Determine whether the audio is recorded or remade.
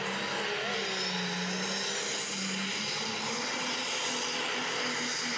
recorded